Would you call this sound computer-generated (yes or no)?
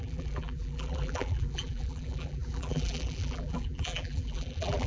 yes